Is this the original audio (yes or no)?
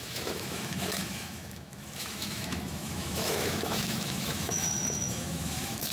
no